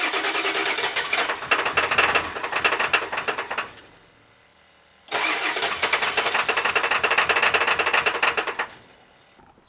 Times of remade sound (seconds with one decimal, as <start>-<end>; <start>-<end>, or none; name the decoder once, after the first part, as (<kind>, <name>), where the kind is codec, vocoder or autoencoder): 4.5-6.7 (vocoder, BigVGAN v2)

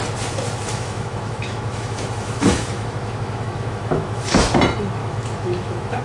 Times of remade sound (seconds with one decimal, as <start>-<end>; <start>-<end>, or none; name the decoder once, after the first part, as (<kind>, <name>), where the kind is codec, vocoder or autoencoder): 0.7-4.3 (autoencoder, DAC-VAE); 5.0-6.0

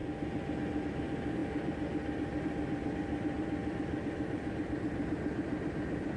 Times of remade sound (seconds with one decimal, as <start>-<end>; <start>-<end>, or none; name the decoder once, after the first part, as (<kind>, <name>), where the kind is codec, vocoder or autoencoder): 0.8-1.4 (vocoder, BigVGAN v2); 2.4-6.2

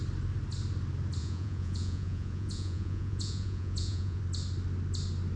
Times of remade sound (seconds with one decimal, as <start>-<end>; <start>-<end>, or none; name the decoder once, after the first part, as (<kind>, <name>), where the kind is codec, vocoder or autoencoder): 1.2-4.2 (vocoder, Vocos)